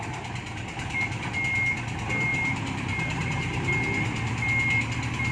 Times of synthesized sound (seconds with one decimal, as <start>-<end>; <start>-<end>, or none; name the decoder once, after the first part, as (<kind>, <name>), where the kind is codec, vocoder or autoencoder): 2.3-3.7 (vocoder, BigVGAN v2)